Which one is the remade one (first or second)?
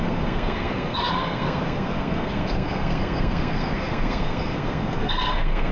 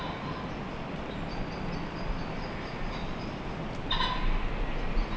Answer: first